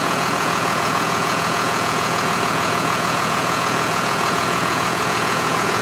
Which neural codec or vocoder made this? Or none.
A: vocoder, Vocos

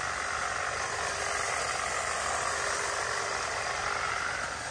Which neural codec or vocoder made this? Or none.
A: none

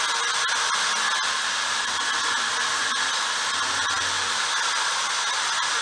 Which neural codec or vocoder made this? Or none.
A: none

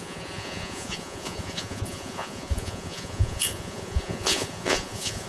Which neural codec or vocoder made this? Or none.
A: vocoder, Vocos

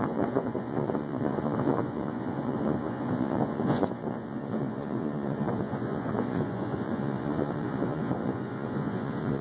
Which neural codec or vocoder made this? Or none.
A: vocoder, Vocos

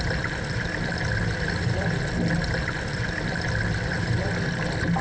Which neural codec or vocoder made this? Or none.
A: none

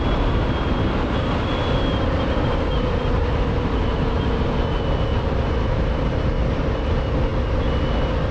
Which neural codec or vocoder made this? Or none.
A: none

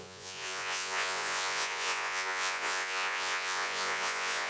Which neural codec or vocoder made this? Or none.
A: vocoder, Vocos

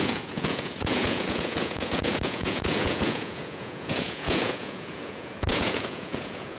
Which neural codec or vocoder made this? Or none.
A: vocoder, Vocos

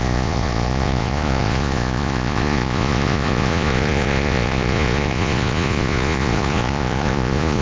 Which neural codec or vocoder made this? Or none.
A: vocoder, Vocos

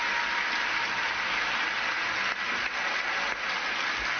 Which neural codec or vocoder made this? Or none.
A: none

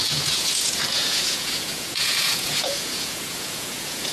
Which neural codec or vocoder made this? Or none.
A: vocoder, Vocos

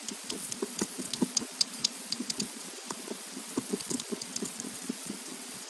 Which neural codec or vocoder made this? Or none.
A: vocoder, Vocos